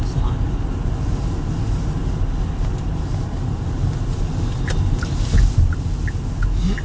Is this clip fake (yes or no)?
no